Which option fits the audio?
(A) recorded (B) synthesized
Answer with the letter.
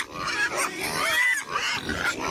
A